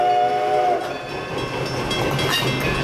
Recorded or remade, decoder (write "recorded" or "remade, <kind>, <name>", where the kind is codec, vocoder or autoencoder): recorded